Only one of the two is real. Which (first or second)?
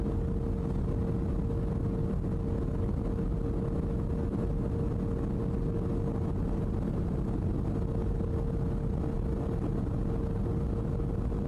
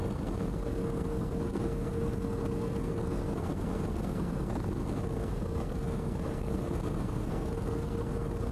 first